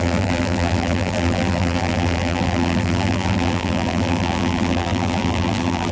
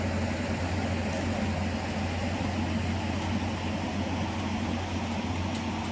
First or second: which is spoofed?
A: first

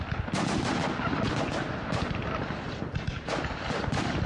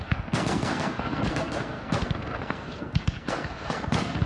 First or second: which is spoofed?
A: second